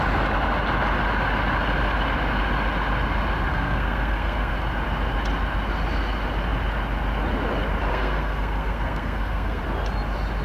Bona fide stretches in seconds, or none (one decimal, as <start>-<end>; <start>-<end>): 0.0-3.5; 4.5-7.9; 9.6-10.4